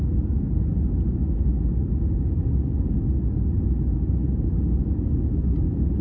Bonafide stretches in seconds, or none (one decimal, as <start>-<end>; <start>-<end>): 0.0-1.5; 2.4-6.0